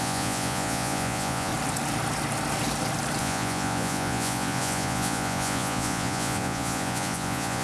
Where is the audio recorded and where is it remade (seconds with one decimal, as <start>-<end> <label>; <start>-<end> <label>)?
0.0-1.5 remade; 1.5-3.2 recorded; 3.2-7.6 remade